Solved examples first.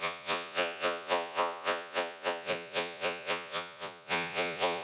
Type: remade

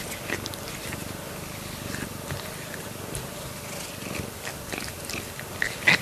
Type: recorded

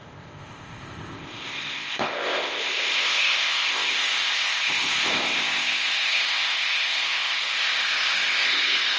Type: remade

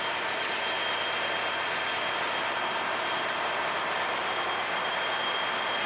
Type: recorded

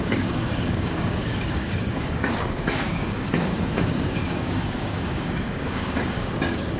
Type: remade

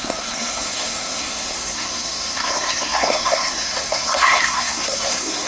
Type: remade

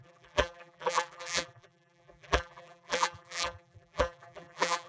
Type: remade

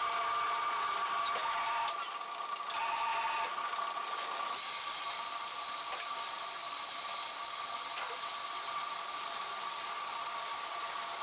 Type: recorded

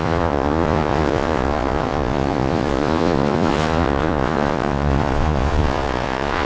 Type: remade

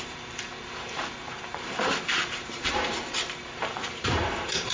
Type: remade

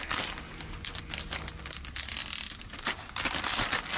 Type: recorded